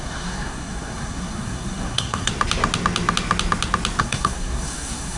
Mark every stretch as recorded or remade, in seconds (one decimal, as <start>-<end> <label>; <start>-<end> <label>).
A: 0.0-2.3 remade; 2.3-4.0 recorded; 4.0-5.2 remade